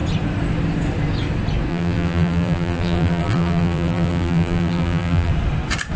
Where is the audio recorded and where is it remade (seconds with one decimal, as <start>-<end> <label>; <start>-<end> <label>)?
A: 0.0-1.7 recorded; 1.7-5.3 remade; 5.3-6.0 recorded